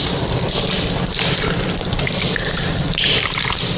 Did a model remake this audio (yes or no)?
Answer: yes